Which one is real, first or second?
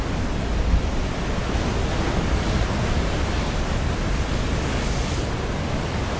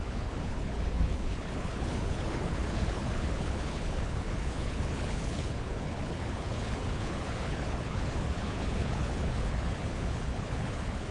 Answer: first